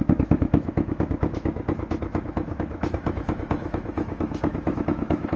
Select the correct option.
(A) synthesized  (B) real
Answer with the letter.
A